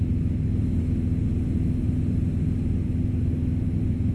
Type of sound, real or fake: real